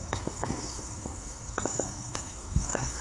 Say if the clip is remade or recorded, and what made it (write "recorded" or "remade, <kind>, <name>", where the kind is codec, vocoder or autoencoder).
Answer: remade, codec, SNAC